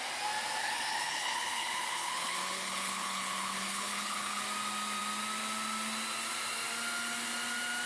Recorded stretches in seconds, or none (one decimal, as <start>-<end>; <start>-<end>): 0.0-0.6; 4.4-7.9